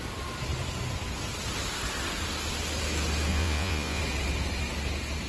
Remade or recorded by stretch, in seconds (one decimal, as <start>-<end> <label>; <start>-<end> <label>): 0.0-3.3 recorded; 3.3-4.0 remade; 4.0-5.3 recorded